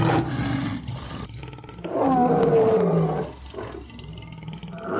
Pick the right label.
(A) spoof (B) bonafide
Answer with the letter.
B